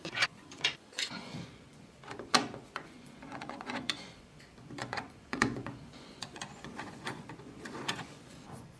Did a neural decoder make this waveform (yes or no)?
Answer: yes